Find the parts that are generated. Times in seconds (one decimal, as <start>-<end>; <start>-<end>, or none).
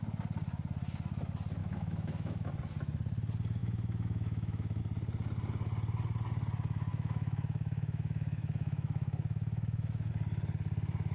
1.6-2.5; 3.6-4.8; 6.9-10.1